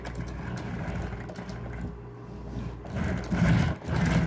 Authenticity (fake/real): real